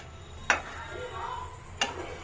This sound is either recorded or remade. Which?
recorded